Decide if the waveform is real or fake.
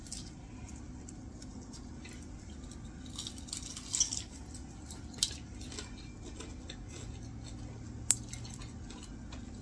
real